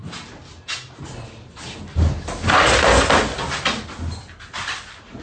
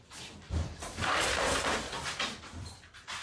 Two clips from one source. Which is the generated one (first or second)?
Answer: second